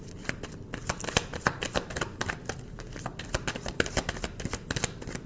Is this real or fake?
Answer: real